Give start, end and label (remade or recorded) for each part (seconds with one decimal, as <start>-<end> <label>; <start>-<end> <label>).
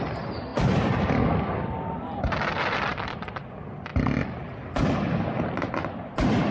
0.0-2.9 recorded; 2.9-3.4 remade; 3.4-6.5 recorded